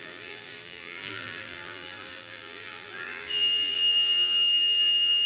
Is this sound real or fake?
fake